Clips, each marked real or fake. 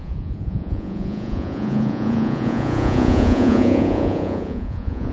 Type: fake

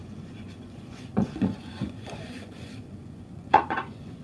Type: fake